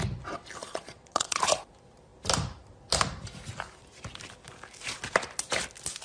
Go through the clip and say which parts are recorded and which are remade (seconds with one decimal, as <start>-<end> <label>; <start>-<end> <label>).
0.0-0.6 recorded; 0.6-1.4 remade; 1.4-6.0 recorded